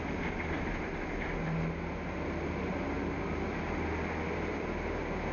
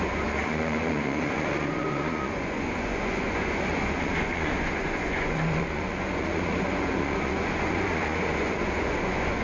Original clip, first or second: first